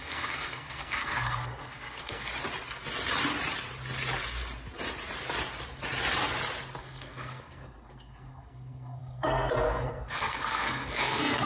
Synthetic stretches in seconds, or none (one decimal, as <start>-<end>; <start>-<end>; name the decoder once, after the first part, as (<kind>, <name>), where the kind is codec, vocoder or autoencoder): 0.0-2.3 (codec, SNAC); 6.8-11.5